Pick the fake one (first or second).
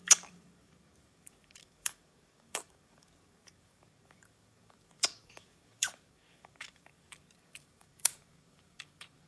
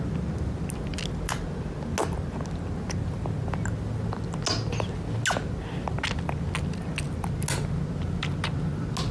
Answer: first